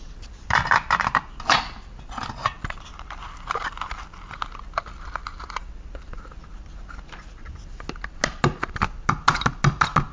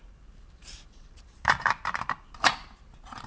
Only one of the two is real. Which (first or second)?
first